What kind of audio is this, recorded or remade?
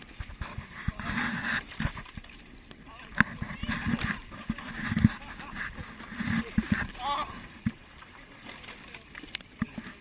remade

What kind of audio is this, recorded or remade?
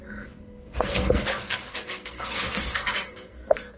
remade